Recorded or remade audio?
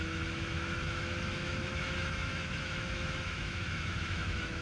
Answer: remade